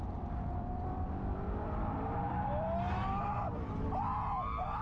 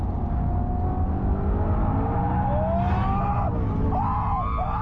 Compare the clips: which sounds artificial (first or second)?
first